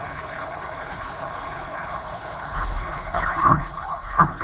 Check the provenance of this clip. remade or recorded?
remade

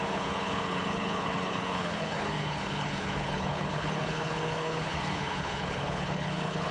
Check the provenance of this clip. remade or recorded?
remade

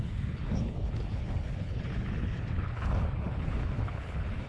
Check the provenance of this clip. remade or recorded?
remade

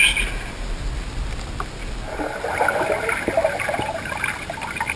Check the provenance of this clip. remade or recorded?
recorded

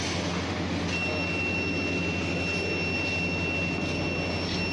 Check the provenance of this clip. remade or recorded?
recorded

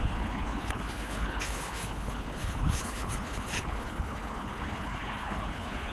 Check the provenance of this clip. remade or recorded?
remade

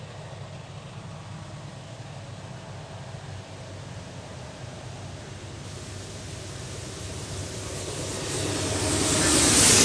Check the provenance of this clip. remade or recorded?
recorded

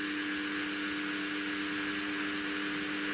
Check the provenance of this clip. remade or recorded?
recorded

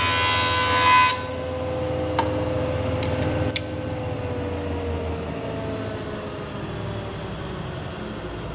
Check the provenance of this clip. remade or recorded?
recorded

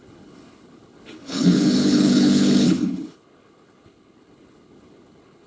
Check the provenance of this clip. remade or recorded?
remade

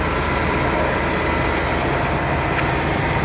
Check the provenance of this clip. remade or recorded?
recorded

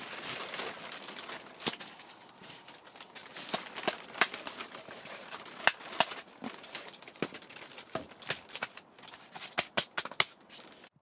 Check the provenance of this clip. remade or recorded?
recorded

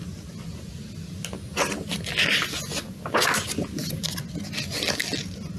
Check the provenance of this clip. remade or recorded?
recorded